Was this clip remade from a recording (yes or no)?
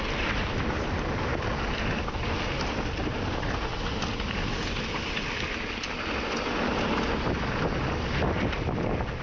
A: no